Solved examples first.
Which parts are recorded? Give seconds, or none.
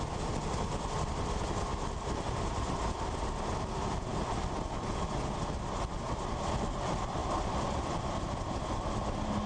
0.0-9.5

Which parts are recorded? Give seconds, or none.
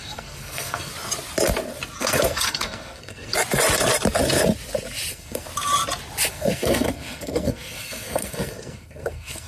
0.9-2.0; 3.3-5.1; 5.5-6.3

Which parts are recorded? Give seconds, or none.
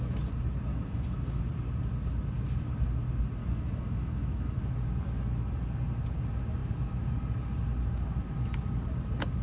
0.0-0.7; 1.4-3.4; 4.6-9.4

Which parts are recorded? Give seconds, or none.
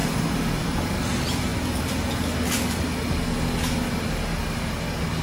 0.9-5.2